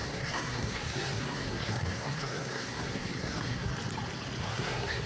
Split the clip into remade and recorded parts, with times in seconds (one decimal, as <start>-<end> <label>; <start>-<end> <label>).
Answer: 0.0-3.7 remade; 3.7-4.4 recorded; 4.4-5.1 remade